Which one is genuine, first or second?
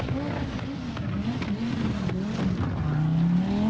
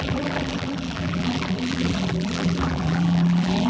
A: first